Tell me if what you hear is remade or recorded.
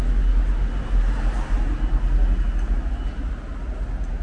recorded